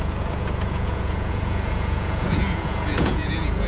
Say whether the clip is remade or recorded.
remade